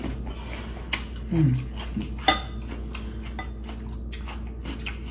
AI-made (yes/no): no